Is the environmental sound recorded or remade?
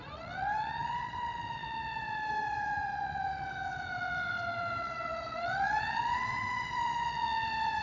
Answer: remade